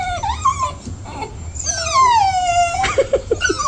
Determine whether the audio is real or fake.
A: real